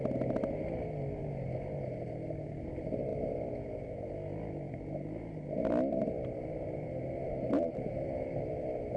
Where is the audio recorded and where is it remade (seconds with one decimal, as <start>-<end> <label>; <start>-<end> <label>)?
0.0-3.1 recorded; 3.1-8.4 remade; 8.4-9.0 recorded